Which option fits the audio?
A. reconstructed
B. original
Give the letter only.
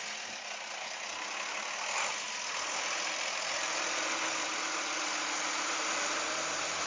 B